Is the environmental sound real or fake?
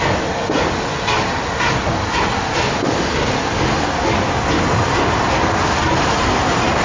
real